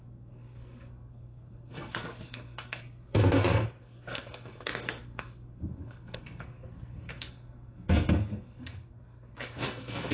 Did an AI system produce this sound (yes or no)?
yes